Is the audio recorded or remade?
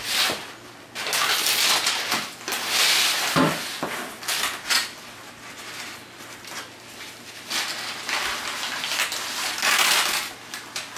recorded